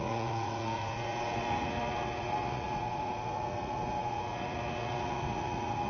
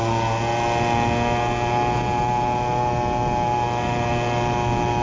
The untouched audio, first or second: second